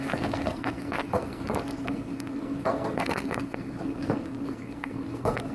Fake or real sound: fake